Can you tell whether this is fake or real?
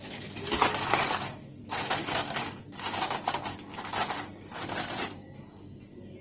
real